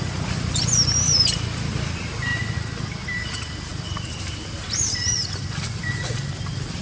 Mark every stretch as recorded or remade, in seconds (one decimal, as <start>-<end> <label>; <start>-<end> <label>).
0.0-2.3 remade; 2.3-3.3 recorded; 3.3-3.7 remade; 3.7-6.3 recorded; 6.3-6.8 remade